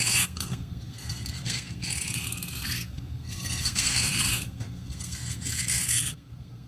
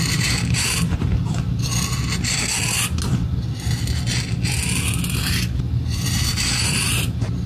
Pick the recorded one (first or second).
second